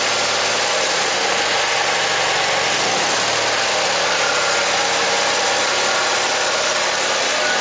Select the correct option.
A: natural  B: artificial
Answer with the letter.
A